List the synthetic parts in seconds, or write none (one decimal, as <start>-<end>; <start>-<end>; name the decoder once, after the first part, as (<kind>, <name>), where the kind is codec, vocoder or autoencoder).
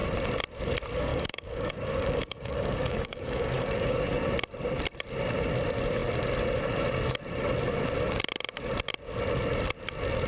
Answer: 1.1-4.0 (codec, DAC)